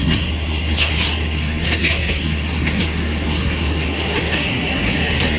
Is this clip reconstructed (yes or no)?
yes